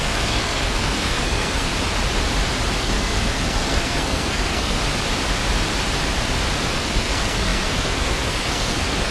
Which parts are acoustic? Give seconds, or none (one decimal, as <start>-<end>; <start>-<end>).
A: 1.7-2.8; 4.8-6.7